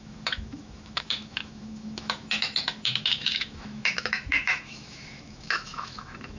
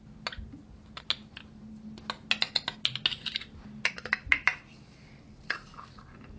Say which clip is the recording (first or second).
second